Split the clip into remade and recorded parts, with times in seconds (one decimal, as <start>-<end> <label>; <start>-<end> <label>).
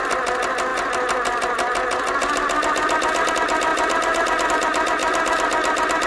0.0-6.1 recorded